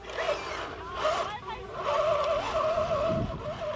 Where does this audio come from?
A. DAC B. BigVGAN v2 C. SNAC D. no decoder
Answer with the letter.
D